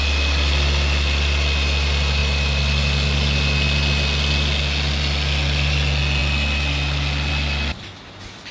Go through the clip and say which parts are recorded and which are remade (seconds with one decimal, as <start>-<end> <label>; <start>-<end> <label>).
0.0-8.5 recorded